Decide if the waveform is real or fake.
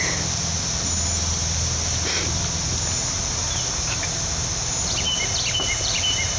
real